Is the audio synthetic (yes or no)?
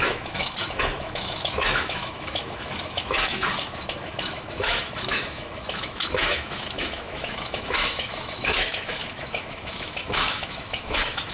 yes